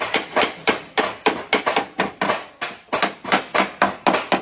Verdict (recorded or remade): recorded